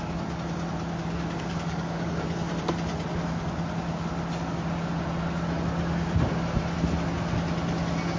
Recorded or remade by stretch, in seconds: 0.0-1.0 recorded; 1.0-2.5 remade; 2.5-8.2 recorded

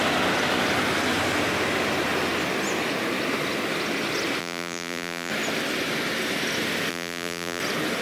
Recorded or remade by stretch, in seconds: 0.0-4.4 recorded; 4.4-5.3 remade; 5.3-6.9 recorded; 6.9-7.6 remade; 7.6-8.0 recorded